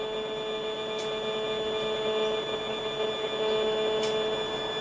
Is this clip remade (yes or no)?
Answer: no